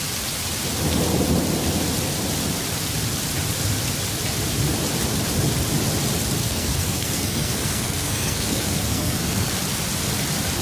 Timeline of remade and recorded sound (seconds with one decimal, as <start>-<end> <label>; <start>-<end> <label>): 0.0-6.4 recorded; 6.4-9.5 remade; 9.5-10.6 recorded